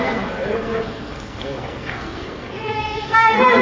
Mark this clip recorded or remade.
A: remade